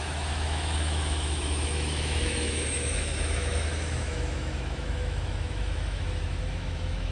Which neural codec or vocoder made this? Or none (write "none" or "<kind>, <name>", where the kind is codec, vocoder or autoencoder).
autoencoder, DAC-VAE